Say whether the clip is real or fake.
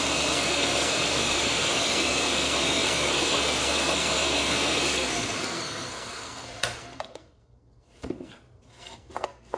fake